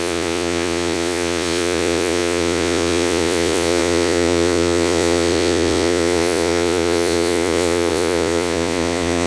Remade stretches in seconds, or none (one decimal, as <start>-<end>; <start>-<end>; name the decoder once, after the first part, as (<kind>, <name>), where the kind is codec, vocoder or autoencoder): 0.0-9.3 (vocoder, Vocos)